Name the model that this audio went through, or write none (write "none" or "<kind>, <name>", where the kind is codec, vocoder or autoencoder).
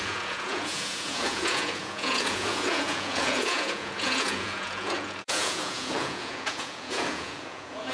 vocoder, Vocos